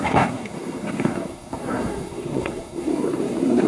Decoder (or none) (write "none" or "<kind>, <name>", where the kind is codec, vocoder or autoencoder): codec, SNAC